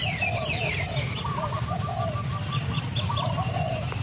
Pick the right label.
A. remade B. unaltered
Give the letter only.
A